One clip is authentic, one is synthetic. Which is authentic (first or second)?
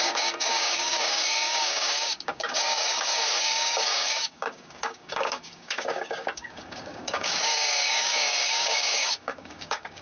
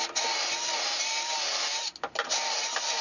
second